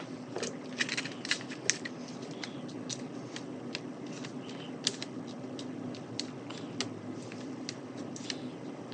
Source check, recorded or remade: recorded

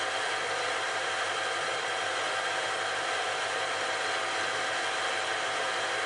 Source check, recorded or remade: recorded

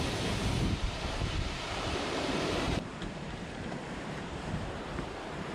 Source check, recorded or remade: remade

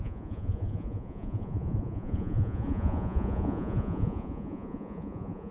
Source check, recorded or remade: remade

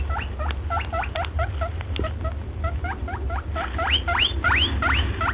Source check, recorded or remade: recorded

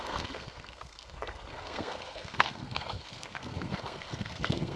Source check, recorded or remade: remade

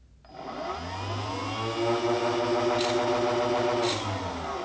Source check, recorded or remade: recorded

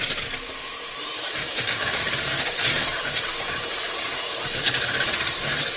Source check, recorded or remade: remade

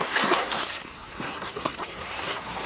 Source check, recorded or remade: remade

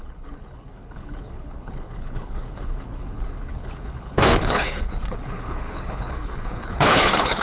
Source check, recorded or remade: remade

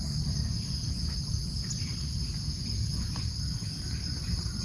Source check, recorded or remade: recorded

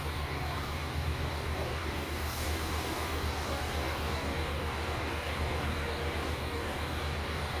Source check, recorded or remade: remade